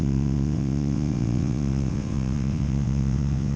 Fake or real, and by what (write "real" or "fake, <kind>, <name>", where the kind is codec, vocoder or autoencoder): fake, vocoder, WaveNeXt